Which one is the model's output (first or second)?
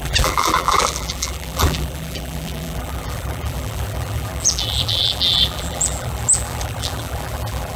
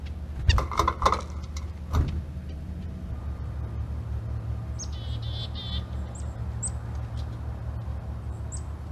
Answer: first